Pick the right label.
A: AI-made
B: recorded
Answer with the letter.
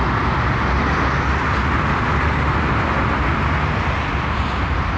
B